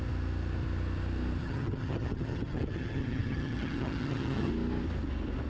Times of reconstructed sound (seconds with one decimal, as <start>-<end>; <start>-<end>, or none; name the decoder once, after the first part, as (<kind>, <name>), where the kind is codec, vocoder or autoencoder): 1.4-4.5 (vocoder, HiFi-GAN)